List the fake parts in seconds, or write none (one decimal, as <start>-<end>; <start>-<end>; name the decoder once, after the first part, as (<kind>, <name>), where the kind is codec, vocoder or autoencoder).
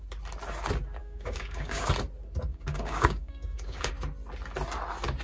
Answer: 1.0-1.9 (codec, DAC); 2.5-3.9